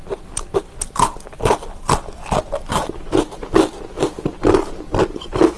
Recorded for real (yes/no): yes